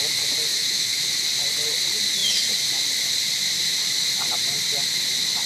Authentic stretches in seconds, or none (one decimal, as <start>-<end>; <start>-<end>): 0.0-0.5; 1.0-5.5

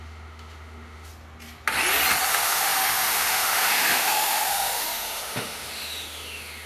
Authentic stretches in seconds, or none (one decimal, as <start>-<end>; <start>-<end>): 1.1-2.3

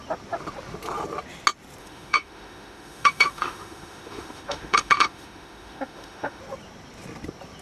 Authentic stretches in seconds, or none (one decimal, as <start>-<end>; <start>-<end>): 0.0-1.8; 6.4-7.6

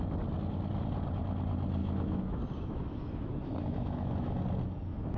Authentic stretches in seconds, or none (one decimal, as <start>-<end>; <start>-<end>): 0.0-1.8; 4.4-5.2

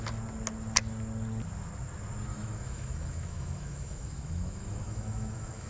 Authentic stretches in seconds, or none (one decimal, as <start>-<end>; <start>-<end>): 0.0-2.3

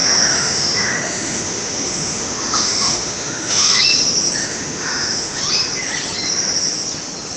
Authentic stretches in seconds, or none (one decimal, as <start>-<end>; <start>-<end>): 3.8-4.4; 5.4-7.4